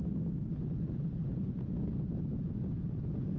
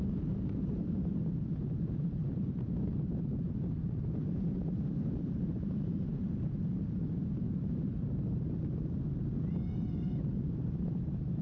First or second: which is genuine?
first